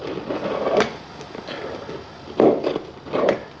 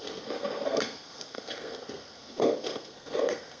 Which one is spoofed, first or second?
second